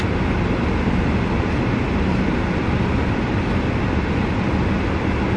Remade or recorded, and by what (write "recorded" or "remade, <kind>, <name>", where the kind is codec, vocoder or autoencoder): recorded